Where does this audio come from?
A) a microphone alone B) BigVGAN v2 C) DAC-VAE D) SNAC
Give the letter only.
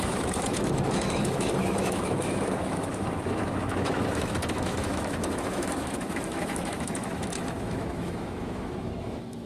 C